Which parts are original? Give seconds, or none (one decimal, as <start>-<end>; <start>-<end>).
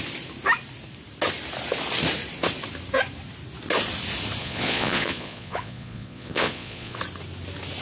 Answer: 0.0-4.4; 7.0-7.8